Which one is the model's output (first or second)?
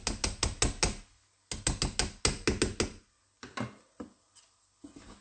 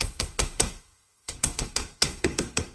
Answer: second